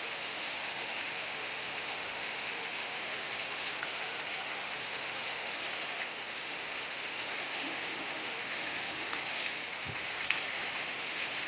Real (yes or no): no